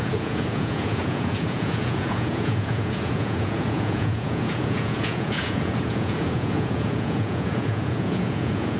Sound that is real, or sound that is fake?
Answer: fake